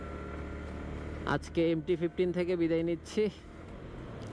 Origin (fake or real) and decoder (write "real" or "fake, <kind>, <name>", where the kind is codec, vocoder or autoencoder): real